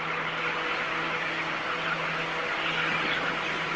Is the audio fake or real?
real